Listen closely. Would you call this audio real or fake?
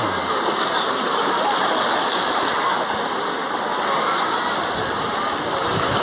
real